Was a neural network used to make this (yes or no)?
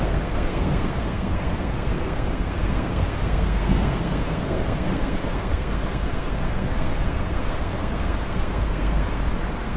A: yes